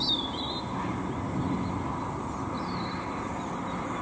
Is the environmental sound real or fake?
real